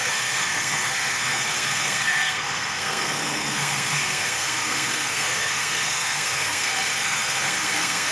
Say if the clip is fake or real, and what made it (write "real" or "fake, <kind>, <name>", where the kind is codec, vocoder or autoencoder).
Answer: fake, codec, SNAC